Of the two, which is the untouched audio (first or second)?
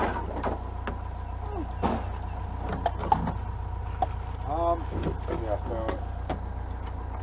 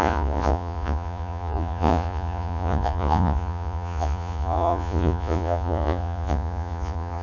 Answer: first